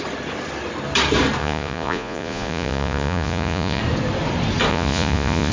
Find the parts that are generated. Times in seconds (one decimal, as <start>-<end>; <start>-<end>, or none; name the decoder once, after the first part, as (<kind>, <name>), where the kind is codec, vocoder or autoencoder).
1.4-3.8 (vocoder, Vocos); 4.7-5.5

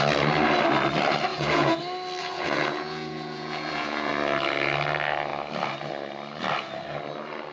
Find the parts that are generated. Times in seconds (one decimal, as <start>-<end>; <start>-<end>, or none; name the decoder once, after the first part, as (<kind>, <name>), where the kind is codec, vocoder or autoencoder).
1.3-1.8 (vocoder, Vocos); 2.2-4.1